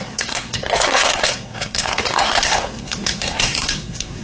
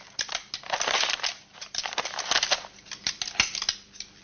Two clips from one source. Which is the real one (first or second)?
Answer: second